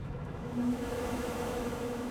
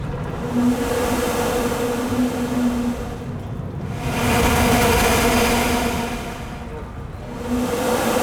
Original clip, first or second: second